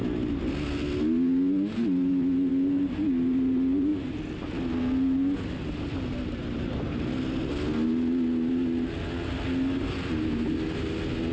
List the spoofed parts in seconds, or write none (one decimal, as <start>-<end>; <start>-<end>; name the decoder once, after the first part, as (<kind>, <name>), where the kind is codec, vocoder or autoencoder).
none